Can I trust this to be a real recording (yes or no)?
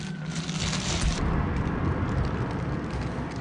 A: yes